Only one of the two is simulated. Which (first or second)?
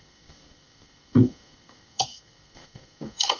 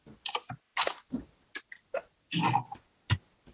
first